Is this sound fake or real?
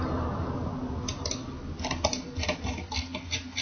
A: real